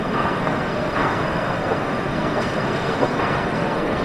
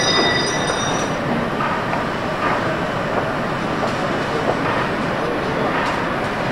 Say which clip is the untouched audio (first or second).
second